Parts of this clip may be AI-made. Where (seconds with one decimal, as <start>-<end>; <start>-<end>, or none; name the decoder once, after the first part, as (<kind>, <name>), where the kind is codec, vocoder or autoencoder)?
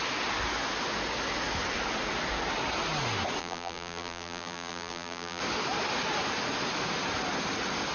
3.4-5.4 (vocoder, BigVGAN v2)